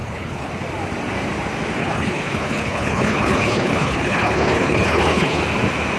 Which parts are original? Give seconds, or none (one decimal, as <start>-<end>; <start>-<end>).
0.5-1.8; 5.4-6.0